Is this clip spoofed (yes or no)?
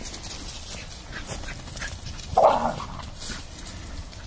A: no